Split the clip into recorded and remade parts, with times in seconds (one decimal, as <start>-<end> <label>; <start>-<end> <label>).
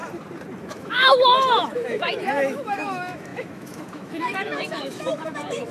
0.0-0.6 recorded; 0.6-5.7 remade